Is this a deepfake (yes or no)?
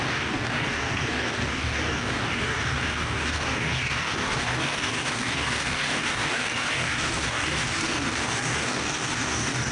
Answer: yes